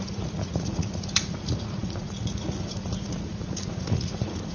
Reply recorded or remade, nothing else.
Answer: remade